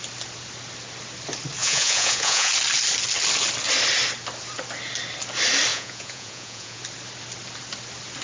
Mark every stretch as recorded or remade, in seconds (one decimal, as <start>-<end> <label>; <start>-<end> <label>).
0.0-1.6 recorded; 1.6-2.5 remade; 2.5-5.7 recorded; 5.7-6.8 remade; 6.8-8.2 recorded